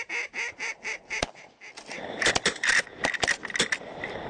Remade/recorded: recorded